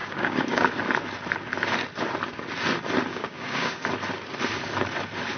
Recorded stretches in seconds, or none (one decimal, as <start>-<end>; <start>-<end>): 0.7-3.1; 3.8-5.4